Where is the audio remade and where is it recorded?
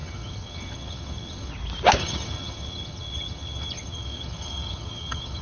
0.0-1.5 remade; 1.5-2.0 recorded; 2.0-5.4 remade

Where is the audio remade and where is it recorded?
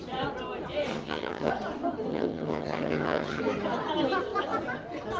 0.0-0.9 recorded; 0.9-1.5 remade; 1.5-2.1 recorded; 2.1-3.4 remade; 3.4-5.2 recorded